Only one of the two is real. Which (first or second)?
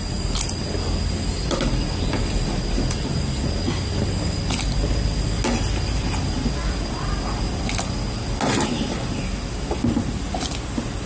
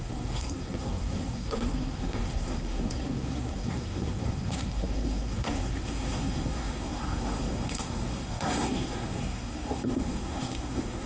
first